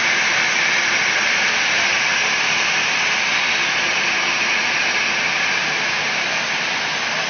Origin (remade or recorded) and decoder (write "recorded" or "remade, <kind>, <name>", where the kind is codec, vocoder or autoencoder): recorded